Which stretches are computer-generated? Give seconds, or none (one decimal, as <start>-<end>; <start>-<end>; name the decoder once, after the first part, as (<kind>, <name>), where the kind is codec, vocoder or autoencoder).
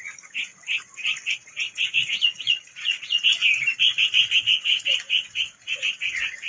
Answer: 0.0-0.5 (vocoder, Vocos); 1.3-3.4; 4.4-6.5